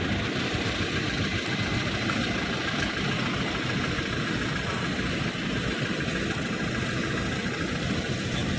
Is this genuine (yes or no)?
yes